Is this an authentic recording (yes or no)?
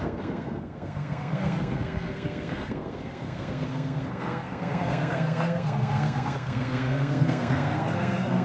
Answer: no